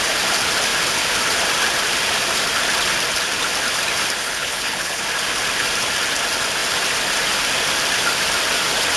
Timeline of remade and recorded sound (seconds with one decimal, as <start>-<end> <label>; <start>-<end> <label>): 0.0-4.2 recorded; 4.2-5.0 remade; 5.0-9.0 recorded